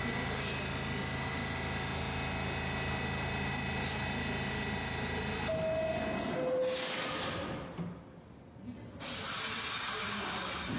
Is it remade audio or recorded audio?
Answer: recorded